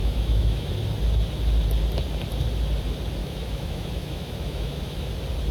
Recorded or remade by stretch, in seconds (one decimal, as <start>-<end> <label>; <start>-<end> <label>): 0.0-0.7 remade; 0.7-3.2 recorded; 3.2-5.1 remade; 5.1-5.5 recorded